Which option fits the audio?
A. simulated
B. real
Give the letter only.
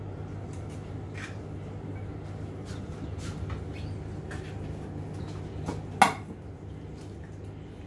B